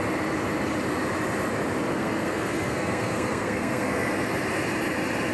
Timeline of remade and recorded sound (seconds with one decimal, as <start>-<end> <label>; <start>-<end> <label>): 0.0-1.9 recorded; 1.9-4.1 remade; 4.1-5.3 recorded